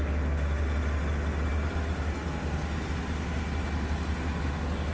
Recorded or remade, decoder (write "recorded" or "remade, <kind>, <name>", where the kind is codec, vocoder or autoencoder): recorded